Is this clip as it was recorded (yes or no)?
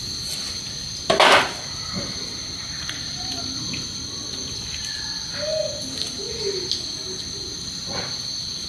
yes